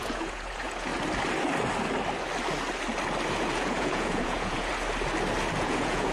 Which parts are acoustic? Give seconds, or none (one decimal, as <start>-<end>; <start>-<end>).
0.9-3.3; 4.7-5.5